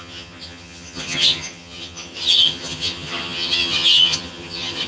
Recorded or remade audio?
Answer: remade